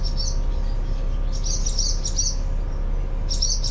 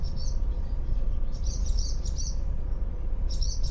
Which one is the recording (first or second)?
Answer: first